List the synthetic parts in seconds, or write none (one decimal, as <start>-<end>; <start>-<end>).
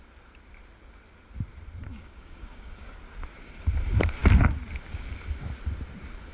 1.9-3.0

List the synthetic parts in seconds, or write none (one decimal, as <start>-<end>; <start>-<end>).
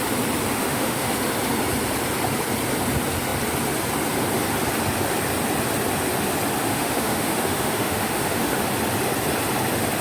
0.5-1.1; 6.7-8.6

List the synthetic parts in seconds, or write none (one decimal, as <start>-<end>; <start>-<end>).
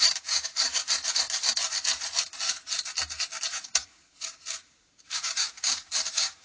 0.0-0.8; 3.5-6.4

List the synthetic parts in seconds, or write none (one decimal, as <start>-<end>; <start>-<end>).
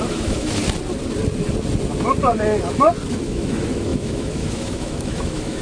0.0-0.6; 3.1-5.6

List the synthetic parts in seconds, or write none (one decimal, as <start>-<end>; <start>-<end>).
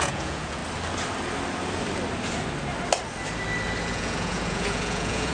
0.0-0.6; 3.8-5.3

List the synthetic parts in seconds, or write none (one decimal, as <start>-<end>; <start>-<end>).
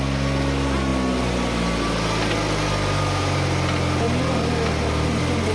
none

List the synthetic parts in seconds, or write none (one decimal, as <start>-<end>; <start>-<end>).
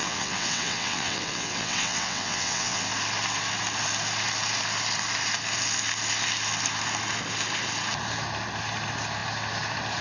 0.0-2.8